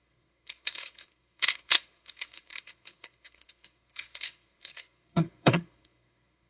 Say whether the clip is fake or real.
fake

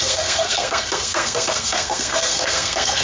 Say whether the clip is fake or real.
fake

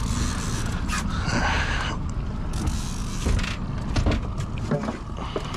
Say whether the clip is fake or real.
real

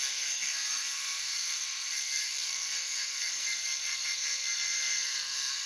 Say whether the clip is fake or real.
fake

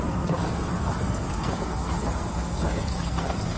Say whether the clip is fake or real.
fake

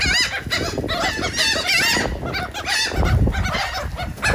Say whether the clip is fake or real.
real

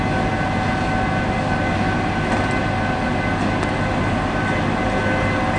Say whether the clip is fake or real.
real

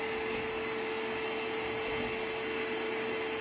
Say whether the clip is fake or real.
real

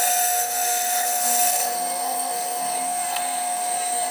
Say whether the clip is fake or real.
fake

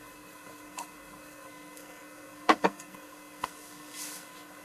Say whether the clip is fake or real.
fake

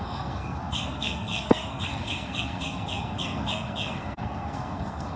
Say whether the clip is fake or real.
fake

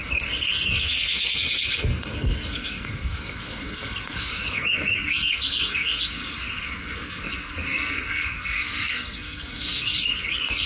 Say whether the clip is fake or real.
fake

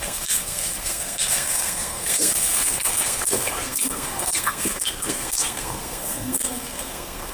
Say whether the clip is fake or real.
fake